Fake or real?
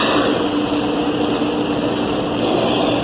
real